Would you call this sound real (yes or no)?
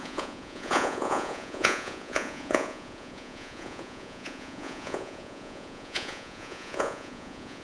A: no